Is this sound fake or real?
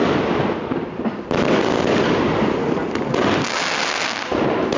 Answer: real